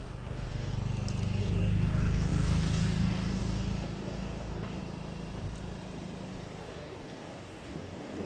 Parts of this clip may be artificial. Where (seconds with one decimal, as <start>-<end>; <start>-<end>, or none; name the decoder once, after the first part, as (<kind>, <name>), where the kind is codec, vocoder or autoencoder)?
0.0-0.7 (codec, DAC); 1.4-4.8; 6.6-8.3